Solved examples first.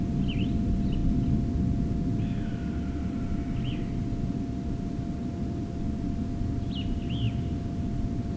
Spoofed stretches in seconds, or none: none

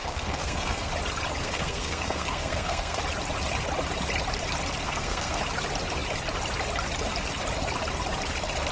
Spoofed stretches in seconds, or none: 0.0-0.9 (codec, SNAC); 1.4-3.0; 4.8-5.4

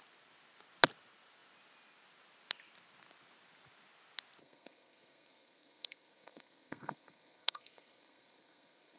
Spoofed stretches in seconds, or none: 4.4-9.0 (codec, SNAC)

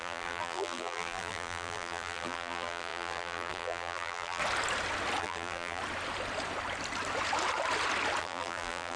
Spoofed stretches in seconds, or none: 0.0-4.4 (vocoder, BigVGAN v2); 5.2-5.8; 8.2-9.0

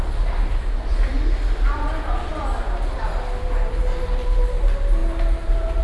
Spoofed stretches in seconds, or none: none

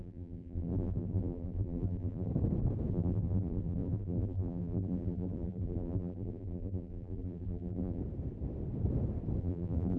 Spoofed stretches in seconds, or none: 0.0-2.3 (vocoder, BigVGAN v2); 2.9-8.0; 9.4-10.0

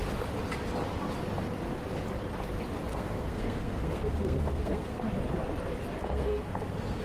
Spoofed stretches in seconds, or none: 2.9-5.0 (codec, SNAC); 6.0-7.0